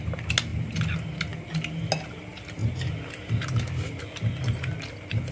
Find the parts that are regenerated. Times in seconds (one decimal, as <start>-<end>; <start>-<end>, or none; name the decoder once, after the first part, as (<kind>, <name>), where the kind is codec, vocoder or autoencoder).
none